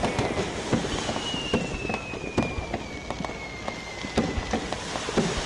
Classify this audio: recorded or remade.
recorded